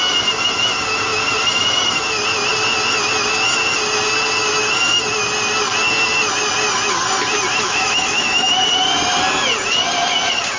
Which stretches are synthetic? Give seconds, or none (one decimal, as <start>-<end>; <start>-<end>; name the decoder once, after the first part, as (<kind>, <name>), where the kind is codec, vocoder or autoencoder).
7.5-8.5 (autoencoder, DAC-VAE)